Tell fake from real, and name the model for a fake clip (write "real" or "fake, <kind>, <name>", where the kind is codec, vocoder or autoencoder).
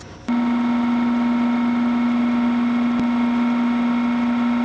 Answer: real